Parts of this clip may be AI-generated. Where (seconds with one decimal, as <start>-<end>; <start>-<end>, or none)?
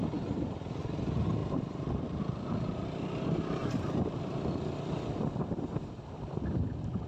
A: 1.4-2.2; 3.6-4.5